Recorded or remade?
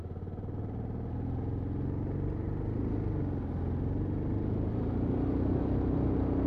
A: recorded